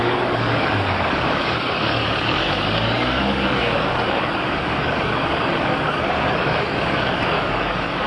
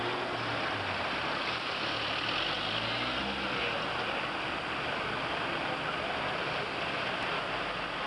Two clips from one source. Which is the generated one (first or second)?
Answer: first